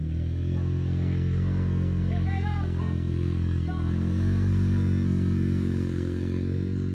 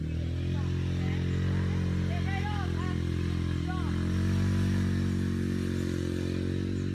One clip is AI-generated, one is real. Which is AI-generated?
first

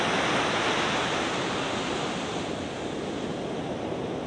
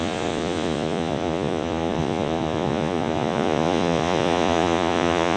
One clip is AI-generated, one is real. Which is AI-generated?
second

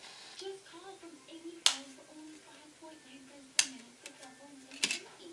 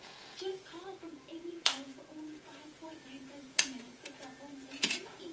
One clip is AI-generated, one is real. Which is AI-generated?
second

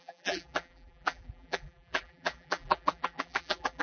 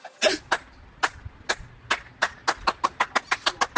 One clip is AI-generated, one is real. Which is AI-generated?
first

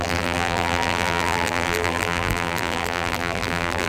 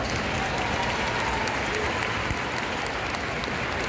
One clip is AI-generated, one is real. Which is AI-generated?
first